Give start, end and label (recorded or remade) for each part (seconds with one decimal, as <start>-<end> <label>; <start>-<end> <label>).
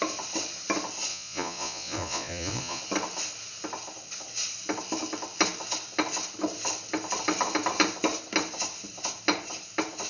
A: 0.0-1.1 recorded; 1.1-2.8 remade; 2.8-10.1 recorded